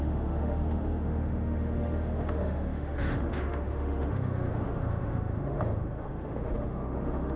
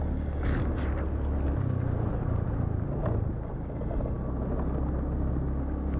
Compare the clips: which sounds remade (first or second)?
first